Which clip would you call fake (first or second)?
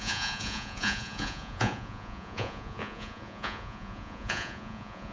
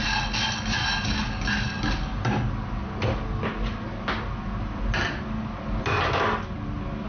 first